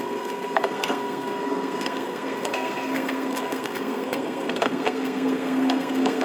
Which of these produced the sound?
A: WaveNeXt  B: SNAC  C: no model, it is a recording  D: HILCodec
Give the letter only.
B